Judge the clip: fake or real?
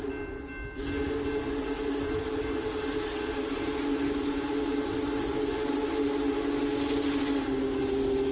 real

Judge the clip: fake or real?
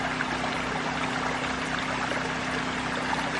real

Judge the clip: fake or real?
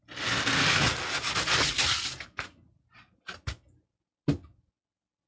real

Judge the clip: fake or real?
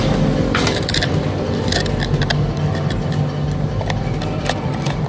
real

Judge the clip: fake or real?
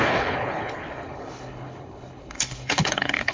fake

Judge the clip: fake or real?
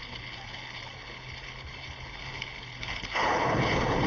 fake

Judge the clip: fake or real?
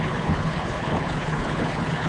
fake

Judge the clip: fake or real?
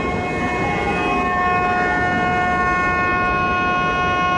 real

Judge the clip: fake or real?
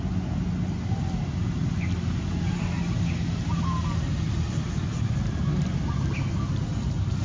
real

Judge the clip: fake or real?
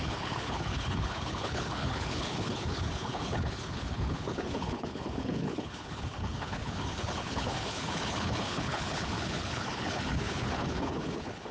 fake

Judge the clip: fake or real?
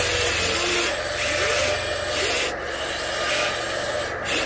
real